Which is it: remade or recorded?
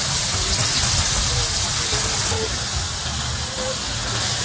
recorded